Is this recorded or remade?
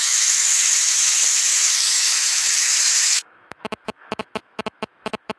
remade